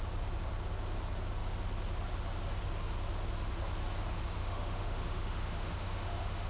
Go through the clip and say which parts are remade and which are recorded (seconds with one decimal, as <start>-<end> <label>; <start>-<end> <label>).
0.0-4.4 recorded; 4.4-6.5 remade